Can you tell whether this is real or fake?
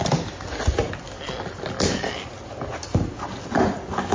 real